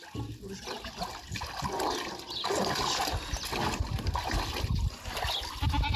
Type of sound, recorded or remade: recorded